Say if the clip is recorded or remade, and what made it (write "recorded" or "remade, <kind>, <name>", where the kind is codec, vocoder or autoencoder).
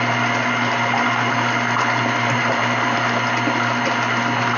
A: recorded